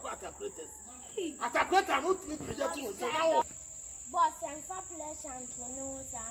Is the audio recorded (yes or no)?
yes